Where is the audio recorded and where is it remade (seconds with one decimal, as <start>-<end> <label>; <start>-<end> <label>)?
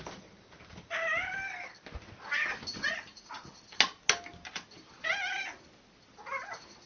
0.0-2.7 recorded; 2.7-3.5 remade; 3.5-6.9 recorded